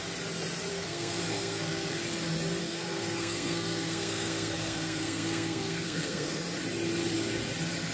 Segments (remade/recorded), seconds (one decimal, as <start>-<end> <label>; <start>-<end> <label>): 0.0-0.7 recorded; 0.7-2.0 remade; 2.0-2.6 recorded; 2.6-6.4 remade; 6.4-7.9 recorded

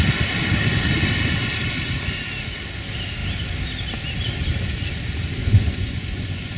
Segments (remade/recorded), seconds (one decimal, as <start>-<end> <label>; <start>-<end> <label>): 0.0-5.4 recorded; 5.4-6.6 remade

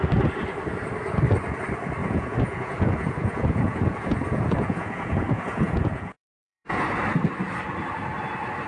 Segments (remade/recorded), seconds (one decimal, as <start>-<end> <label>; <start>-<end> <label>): 0.0-2.0 recorded; 2.0-6.8 remade; 6.8-8.7 recorded

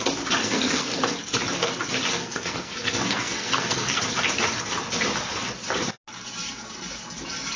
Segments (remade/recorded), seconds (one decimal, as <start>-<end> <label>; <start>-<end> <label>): 0.0-0.4 recorded; 0.4-1.1 remade; 1.1-2.2 recorded; 2.2-4.0 remade; 4.0-7.6 recorded

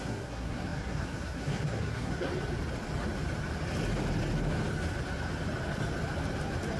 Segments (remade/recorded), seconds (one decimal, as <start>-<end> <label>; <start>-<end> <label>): 0.0-2.3 remade; 2.3-6.8 recorded